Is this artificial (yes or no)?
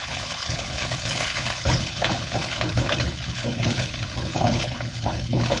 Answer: yes